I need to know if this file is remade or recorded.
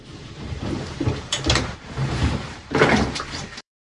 remade